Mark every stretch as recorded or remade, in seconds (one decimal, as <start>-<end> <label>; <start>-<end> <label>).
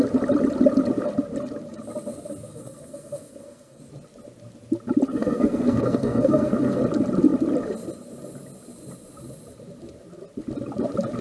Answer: 0.0-2.5 recorded; 2.5-3.8 remade; 3.8-5.1 recorded; 5.1-6.8 remade; 6.8-11.2 recorded